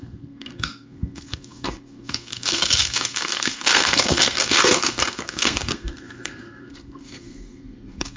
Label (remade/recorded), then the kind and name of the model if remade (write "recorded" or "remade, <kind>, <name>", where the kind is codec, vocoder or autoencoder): remade, codec, SNAC